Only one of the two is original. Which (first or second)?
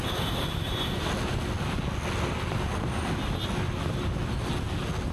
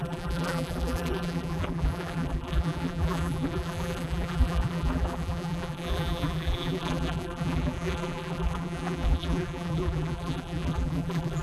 first